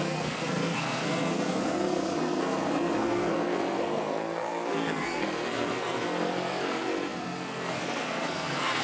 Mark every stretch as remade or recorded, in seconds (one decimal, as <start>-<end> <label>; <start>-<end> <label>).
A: 0.0-8.8 remade